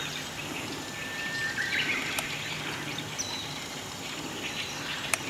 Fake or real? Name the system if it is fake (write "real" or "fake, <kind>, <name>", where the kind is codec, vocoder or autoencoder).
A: real